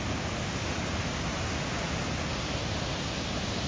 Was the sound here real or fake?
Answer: real